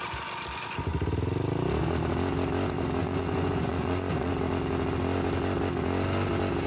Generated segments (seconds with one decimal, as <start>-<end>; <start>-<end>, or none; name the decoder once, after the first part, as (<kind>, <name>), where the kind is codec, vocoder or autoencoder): 3.0-4.3 (vocoder, Vocos)